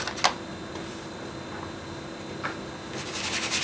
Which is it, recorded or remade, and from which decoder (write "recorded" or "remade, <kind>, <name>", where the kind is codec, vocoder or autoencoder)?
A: recorded